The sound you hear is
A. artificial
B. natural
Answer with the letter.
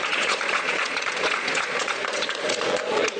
A